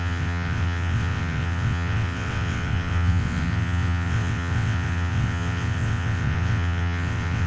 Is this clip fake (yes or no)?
yes